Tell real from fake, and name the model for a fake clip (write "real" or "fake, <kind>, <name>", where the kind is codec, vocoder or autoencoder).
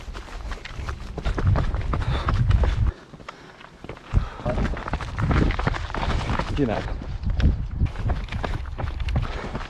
real